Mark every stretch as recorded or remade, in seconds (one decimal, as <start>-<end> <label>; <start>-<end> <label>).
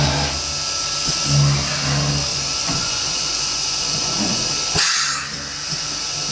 0.0-2.3 recorded; 2.3-4.4 remade; 4.4-6.3 recorded